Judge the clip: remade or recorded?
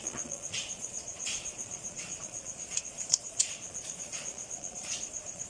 remade